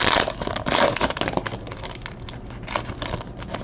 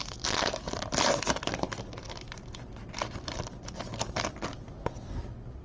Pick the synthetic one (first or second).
second